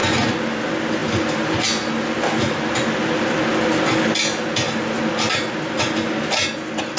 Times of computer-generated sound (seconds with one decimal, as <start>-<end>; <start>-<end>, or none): none